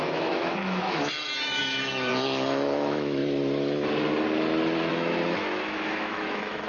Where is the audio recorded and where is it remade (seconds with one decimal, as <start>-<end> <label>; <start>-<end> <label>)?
0.0-3.2 remade; 3.2-4.9 recorded; 4.9-6.7 remade